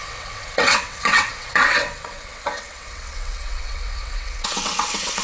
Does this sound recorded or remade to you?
remade